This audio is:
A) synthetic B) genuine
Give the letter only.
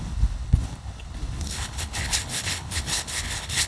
A